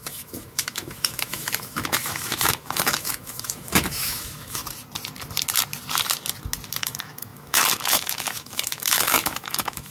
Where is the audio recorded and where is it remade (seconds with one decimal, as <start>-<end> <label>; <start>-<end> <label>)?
0.0-4.6 remade; 4.6-6.8 recorded; 6.8-9.9 remade